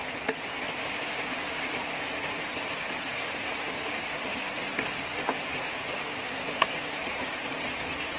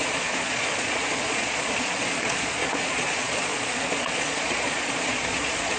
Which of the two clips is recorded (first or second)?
first